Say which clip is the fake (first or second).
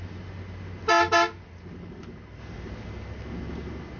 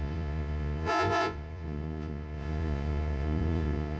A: second